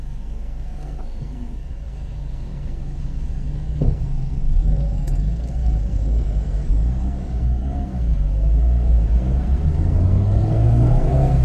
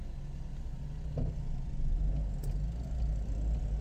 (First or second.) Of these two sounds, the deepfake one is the first